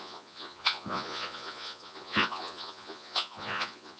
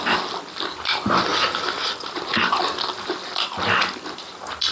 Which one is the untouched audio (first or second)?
second